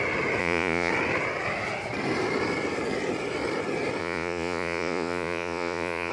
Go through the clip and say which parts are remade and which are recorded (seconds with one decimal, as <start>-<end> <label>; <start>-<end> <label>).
0.0-0.4 recorded; 0.4-0.9 remade; 0.9-4.0 recorded; 4.0-6.1 remade